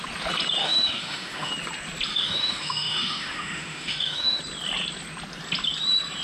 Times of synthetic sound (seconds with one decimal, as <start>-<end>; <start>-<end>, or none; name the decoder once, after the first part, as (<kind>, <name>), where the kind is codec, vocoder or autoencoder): 0.6-1.5 (autoencoder, DAC-VAE); 2.1-4.4